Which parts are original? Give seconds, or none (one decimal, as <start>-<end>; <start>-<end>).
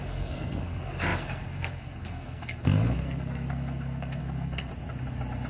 4.7-5.5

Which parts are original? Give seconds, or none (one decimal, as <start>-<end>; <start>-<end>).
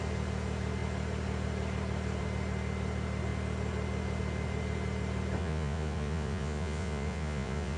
0.0-5.4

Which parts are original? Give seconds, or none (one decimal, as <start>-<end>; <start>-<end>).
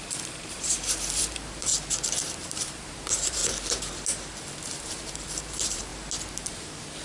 1.7-2.3; 3.4-4.4; 5.9-6.4